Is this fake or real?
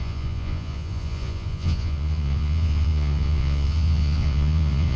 fake